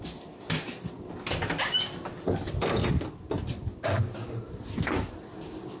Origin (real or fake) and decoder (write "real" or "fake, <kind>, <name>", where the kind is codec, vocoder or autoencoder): real